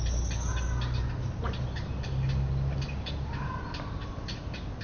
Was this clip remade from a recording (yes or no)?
no